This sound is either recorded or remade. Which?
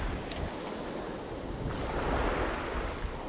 recorded